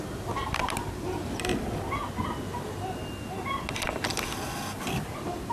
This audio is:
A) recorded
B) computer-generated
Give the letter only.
A